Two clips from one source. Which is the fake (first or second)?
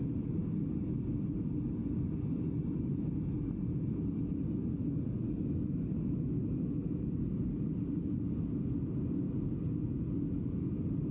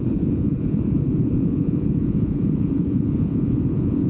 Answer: second